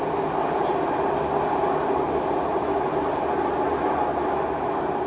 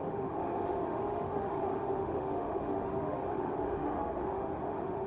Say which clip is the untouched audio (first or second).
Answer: first